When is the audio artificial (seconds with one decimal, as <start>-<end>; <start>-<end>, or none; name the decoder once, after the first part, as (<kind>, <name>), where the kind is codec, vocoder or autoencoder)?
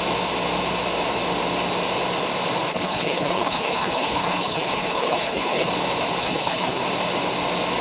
2.7-5.7 (codec, HILCodec); 6.2-6.8